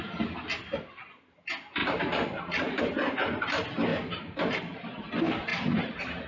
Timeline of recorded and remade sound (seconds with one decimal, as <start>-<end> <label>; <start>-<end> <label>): 0.0-1.8 recorded; 1.8-2.8 remade; 2.8-3.9 recorded; 3.9-4.8 remade; 4.8-5.5 recorded; 5.5-6.3 remade